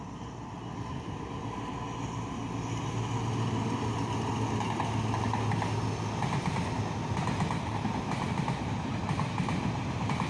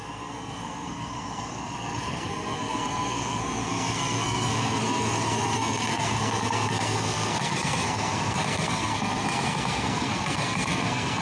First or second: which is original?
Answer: first